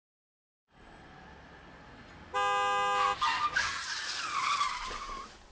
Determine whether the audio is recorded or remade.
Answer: recorded